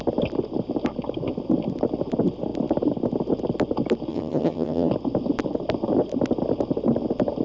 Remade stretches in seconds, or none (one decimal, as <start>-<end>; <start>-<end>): 4.1-4.9